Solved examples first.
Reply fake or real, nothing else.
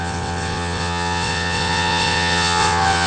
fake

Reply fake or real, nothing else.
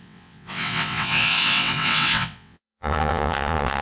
fake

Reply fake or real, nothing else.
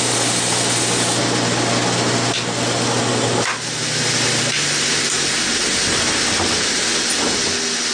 real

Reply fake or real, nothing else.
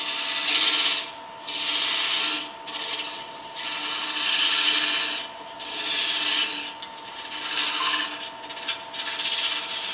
real